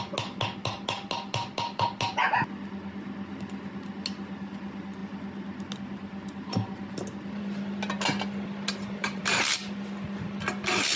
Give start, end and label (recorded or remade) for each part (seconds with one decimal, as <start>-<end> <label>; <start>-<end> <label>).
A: 0.0-9.0 recorded; 9.0-9.6 remade; 9.6-11.0 recorded